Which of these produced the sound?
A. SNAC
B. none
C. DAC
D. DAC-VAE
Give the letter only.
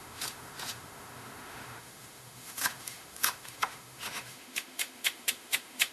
D